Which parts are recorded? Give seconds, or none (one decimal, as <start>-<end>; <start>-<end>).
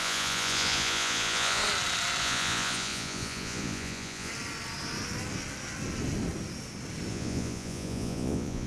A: 1.6-2.2; 4.3-7.1